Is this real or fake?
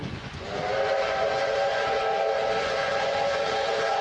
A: fake